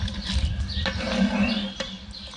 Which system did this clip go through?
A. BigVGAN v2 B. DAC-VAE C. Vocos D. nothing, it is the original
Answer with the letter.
D